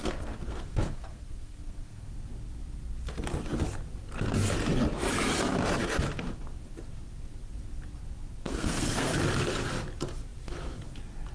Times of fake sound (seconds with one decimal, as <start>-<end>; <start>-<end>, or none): 0.0-2.1; 8.4-9.2